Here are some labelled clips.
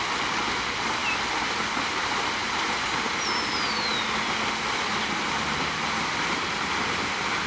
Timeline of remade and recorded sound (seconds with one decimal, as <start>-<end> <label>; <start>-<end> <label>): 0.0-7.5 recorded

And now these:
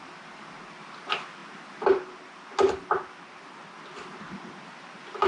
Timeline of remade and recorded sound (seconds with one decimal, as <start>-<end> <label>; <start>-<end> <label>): 0.0-5.3 recorded

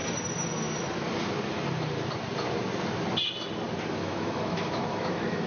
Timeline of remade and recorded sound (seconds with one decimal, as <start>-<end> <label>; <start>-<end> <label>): 0.0-4.0 recorded; 4.0-5.5 remade

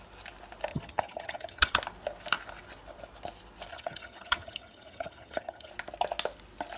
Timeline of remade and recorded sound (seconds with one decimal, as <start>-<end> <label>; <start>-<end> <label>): 0.0-0.7 recorded; 0.7-1.8 remade; 1.8-3.7 recorded; 3.7-5.7 remade; 5.7-6.8 recorded

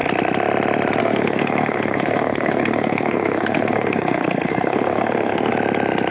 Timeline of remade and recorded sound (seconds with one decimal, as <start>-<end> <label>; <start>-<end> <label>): 0.0-1.0 recorded; 1.0-5.5 remade; 5.5-6.1 recorded

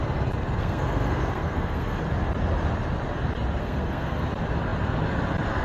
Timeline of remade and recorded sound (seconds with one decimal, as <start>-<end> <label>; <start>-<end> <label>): 0.0-0.6 recorded; 0.6-2.0 remade; 2.0-3.6 recorded; 3.6-4.3 remade; 4.3-5.6 recorded

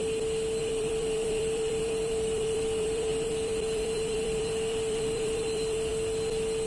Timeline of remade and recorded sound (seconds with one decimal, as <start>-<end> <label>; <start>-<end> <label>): 0.0-0.6 recorded; 0.6-5.9 remade; 5.9-6.7 recorded